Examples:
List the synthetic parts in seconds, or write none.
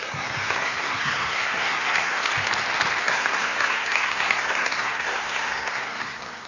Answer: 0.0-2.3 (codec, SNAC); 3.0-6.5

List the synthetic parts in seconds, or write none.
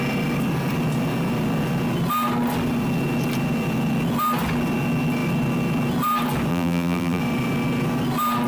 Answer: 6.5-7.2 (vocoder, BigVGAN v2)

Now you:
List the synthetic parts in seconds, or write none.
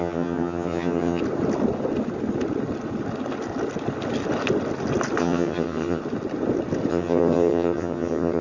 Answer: 0.0-1.2 (vocoder, HiFi-GAN); 5.2-6.0; 6.9-8.4